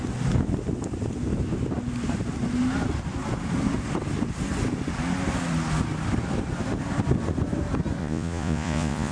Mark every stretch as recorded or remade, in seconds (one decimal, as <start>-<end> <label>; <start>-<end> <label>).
0.0-8.0 recorded; 8.0-9.1 remade